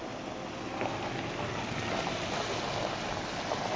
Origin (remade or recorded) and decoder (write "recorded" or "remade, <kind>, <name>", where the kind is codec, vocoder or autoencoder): recorded